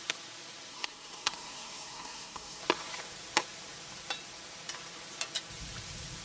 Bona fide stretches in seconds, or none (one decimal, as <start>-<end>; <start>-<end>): 0.0-0.7; 2.6-6.2